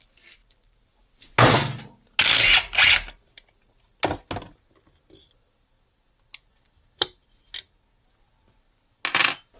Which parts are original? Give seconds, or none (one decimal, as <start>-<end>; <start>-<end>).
0.0-9.6